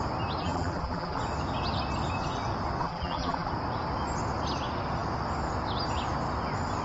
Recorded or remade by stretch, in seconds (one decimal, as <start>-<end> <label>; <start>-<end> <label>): 0.0-0.4 recorded; 0.4-1.2 remade; 1.2-2.8 recorded; 2.8-3.5 remade; 3.5-6.8 recorded